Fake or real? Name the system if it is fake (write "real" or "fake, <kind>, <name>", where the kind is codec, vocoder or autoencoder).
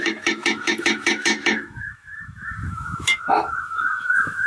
fake, autoencoder, DAC-VAE